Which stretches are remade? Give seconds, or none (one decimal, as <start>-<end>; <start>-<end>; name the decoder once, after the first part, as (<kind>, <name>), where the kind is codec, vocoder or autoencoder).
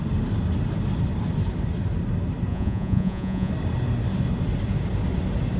2.5-3.5 (vocoder, Vocos)